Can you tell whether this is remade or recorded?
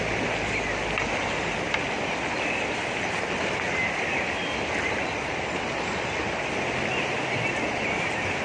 recorded